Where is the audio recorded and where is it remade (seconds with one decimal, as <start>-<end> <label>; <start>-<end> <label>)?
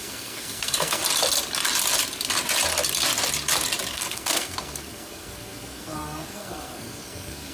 0.0-1.0 remade; 1.0-3.9 recorded; 3.9-7.5 remade